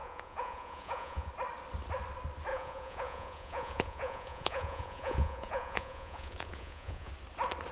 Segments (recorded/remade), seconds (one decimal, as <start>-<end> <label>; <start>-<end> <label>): 0.0-1.3 remade; 1.3-2.5 recorded; 2.5-7.1 remade; 7.1-7.7 recorded